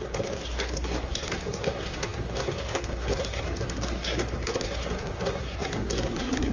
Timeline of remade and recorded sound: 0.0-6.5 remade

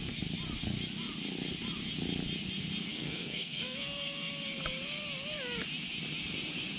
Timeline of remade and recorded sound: 0.0-2.9 recorded; 2.9-4.3 remade; 4.3-6.8 recorded

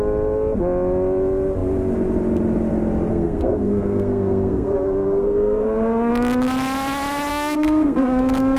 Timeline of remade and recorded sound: 0.0-3.1 recorded; 3.1-6.1 remade; 6.1-7.3 recorded; 7.3-8.2 remade; 8.2-8.6 recorded

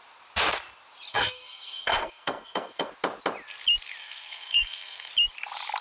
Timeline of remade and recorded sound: 0.0-1.1 recorded; 1.1-2.9 remade; 2.9-4.0 recorded; 4.0-5.1 remade; 5.1-5.8 recorded

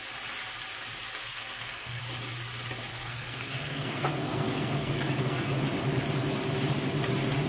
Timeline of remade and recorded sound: 0.0-1.2 recorded; 1.2-2.0 remade; 2.0-2.9 recorded; 2.9-5.5 remade; 5.5-7.5 recorded